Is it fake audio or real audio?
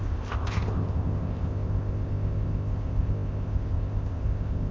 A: fake